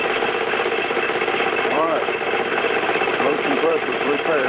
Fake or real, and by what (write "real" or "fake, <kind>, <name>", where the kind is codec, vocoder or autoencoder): fake, vocoder, BigVGAN v2